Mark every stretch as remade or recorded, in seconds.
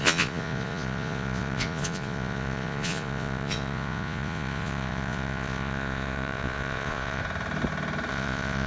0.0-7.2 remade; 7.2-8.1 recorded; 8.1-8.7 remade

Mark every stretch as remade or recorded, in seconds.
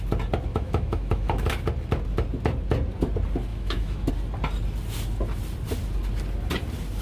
0.0-0.5 recorded; 0.5-1.4 remade; 1.4-3.5 recorded; 3.5-4.1 remade; 4.1-7.0 recorded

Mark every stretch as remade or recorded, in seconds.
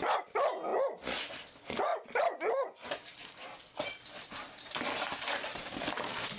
0.0-6.4 recorded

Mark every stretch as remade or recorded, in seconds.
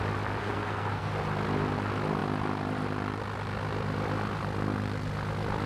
0.0-0.4 recorded; 0.4-1.1 remade; 1.1-5.7 recorded